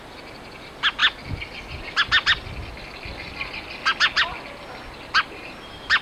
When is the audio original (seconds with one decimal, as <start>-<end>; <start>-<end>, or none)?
0.0-6.0